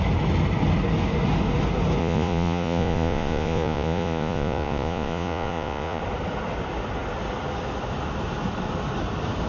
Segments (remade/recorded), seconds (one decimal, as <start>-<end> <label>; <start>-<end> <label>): 0.0-2.0 recorded; 2.0-6.0 remade; 6.0-9.5 recorded